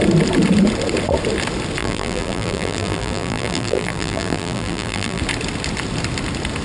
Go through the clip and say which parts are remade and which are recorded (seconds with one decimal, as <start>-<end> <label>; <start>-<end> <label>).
0.0-1.8 recorded; 1.8-5.2 remade; 5.2-6.6 recorded

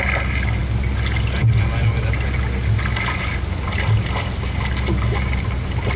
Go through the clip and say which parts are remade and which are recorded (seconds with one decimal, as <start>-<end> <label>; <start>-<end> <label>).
0.0-6.0 recorded

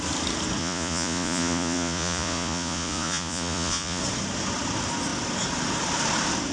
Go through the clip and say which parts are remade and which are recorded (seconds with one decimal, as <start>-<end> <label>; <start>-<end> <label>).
0.0-0.6 recorded; 0.6-4.0 remade; 4.0-6.5 recorded